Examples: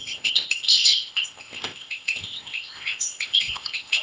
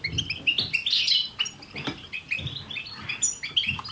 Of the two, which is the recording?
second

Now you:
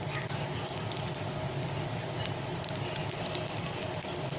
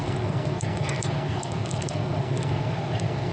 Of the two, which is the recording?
first